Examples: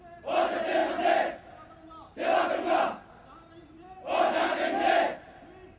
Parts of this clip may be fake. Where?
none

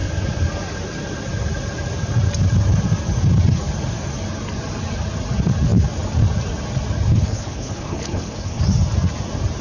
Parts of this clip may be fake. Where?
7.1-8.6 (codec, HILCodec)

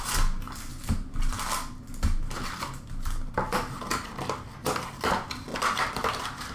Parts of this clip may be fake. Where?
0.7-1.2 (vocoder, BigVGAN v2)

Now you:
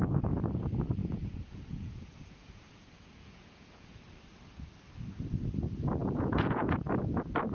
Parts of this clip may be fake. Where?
1.0-4.0 (vocoder, Vocos); 6.0-6.8

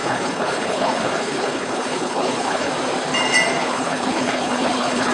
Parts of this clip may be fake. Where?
0.0-2.7 (codec, HILCodec); 3.6-5.1

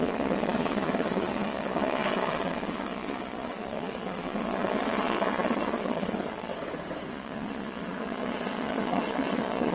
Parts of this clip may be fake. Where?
0.0-6.5 (vocoder, Vocos); 7.1-9.7

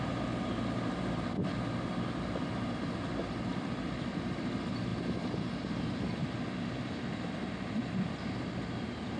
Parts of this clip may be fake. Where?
none